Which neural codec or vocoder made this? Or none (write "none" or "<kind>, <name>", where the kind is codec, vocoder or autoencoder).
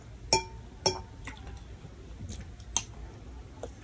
none